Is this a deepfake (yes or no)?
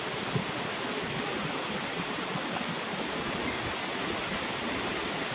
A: yes